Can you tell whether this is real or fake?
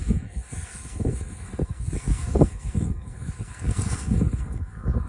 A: fake